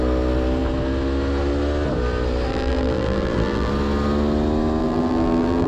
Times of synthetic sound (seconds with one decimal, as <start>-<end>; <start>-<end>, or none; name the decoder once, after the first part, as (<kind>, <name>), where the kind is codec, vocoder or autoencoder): 2.5-3.7 (vocoder, BigVGAN v2); 4.8-5.7